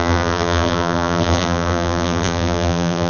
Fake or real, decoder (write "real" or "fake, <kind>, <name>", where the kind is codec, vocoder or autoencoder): fake, vocoder, BigVGAN v2